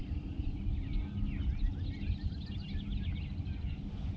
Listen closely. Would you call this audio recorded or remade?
recorded